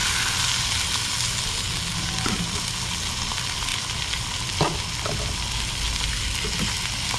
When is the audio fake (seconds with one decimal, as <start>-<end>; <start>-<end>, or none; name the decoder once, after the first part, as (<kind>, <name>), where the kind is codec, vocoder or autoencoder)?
none